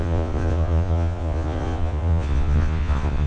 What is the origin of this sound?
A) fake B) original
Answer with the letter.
A